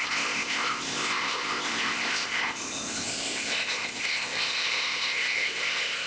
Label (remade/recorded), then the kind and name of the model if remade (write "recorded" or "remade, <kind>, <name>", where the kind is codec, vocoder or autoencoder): remade, codec, ZipCodec